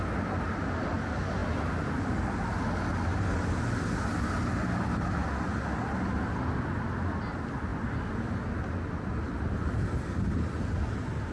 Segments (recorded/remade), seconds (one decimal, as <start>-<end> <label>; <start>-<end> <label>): 0.0-11.3 recorded